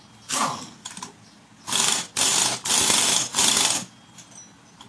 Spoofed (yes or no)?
no